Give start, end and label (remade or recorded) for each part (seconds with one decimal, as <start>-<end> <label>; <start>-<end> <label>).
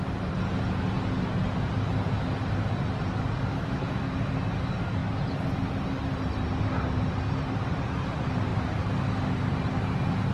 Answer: 0.0-3.5 recorded; 3.5-4.1 remade; 4.1-10.3 recorded